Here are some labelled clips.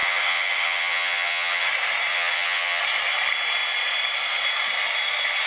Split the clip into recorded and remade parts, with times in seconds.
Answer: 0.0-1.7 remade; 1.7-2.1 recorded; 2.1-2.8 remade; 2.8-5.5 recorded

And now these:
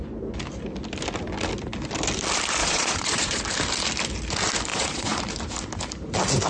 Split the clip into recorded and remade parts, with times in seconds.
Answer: 0.0-2.6 recorded; 2.6-3.4 remade; 3.4-4.7 recorded; 4.7-5.2 remade; 5.2-6.5 recorded

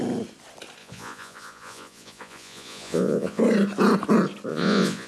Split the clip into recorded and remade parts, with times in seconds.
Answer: 0.0-0.8 recorded; 0.8-3.4 remade; 3.4-4.5 recorded; 4.5-5.1 remade

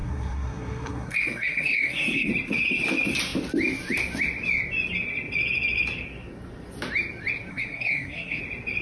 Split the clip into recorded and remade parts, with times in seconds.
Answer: 0.0-2.3 remade; 2.3-7.5 recorded; 7.5-8.4 remade; 8.4-8.8 recorded

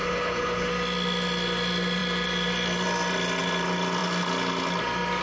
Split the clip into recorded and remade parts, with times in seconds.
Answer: 0.0-0.7 remade; 0.7-5.2 recorded